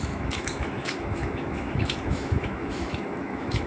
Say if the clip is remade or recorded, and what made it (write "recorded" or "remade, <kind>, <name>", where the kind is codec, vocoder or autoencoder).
remade, autoencoder, DAC-VAE